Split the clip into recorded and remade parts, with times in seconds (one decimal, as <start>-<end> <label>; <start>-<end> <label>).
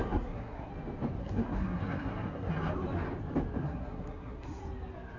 0.0-0.7 remade; 0.7-1.2 recorded; 1.2-2.5 remade; 2.5-3.6 recorded; 3.6-4.6 remade; 4.6-5.2 recorded